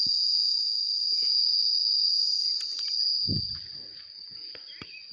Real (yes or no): yes